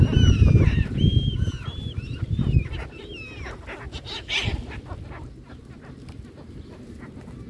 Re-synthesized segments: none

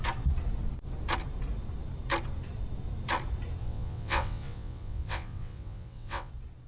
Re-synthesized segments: 3.6-6.3 (vocoder, WaveNeXt)